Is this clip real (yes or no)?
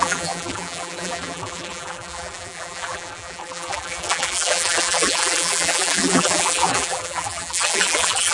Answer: no